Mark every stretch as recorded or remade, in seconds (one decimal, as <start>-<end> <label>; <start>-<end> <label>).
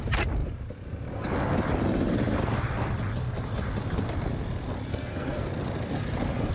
0.0-4.9 recorded; 4.9-5.5 remade; 5.5-6.5 recorded